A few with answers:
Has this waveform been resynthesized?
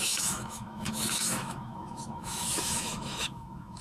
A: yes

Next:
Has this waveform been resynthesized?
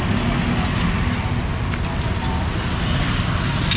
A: no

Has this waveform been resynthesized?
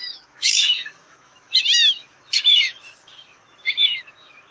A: yes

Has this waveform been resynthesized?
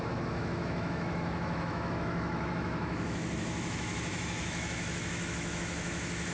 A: yes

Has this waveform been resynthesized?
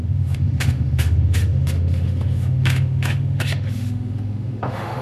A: yes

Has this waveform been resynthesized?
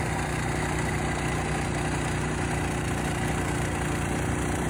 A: no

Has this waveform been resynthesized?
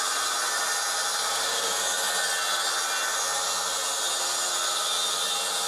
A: no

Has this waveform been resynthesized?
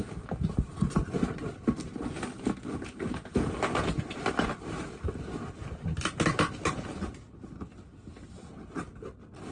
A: no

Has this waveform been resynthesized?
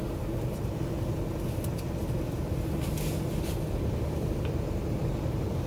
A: no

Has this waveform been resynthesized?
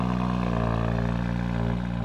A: no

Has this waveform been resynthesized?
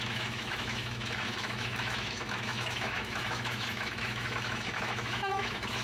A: yes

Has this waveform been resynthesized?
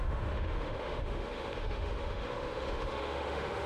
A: yes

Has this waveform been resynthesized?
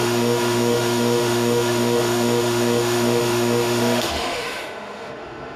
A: yes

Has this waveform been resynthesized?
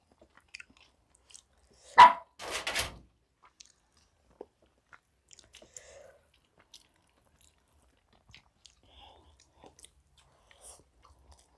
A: no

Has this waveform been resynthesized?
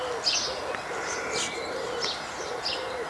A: no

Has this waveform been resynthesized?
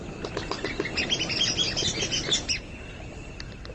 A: no